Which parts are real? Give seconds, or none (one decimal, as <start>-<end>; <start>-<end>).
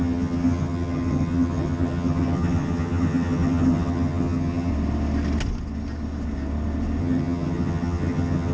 4.7-7.0